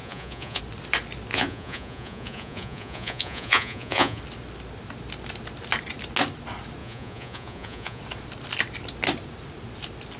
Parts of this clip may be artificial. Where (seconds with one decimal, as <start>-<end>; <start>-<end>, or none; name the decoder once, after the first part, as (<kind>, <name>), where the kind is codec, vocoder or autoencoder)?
0.0-0.6 (vocoder, Vocos); 1.3-4.2; 6.8-8.0